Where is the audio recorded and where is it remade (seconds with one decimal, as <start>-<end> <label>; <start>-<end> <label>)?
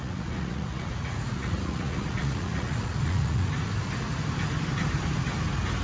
0.0-3.5 remade; 3.5-5.8 recorded